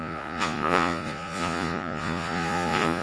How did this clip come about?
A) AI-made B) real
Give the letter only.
A